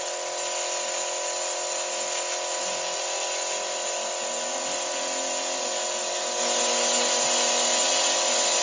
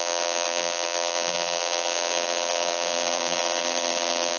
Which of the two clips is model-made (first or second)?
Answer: second